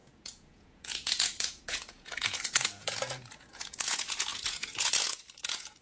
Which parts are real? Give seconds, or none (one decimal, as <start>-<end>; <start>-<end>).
none

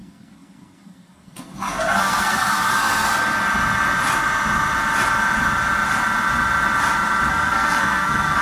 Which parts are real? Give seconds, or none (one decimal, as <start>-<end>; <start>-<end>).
3.1-7.3

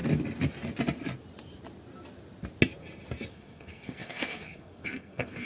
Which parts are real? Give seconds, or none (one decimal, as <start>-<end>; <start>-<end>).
0.0-3.3

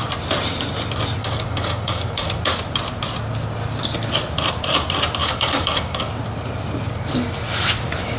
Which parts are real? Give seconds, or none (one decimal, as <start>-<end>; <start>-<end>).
0.0-1.2; 2.4-5.2; 6.1-8.2

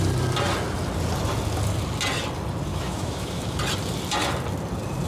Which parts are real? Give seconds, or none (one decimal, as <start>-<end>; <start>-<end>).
0.0-2.7; 3.6-5.1

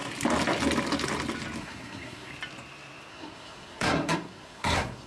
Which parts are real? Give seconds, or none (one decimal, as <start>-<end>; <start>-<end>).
0.0-1.6; 2.3-3.1

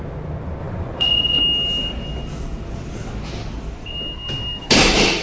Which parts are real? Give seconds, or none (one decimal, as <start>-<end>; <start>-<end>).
0.0-0.6; 1.4-5.2